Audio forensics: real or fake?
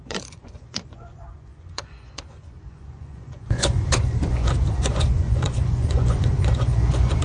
fake